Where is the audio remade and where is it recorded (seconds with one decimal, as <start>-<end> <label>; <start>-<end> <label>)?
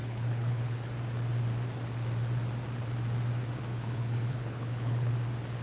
0.0-0.9 remade; 0.9-3.7 recorded; 3.7-5.1 remade; 5.1-5.6 recorded